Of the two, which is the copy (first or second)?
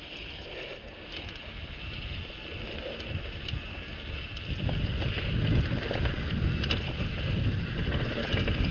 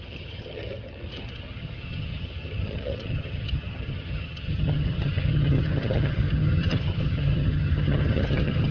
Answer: second